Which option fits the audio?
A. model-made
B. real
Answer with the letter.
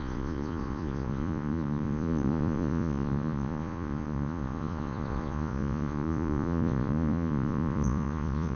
A